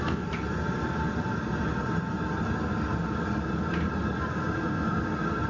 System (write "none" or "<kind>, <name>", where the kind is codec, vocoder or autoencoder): none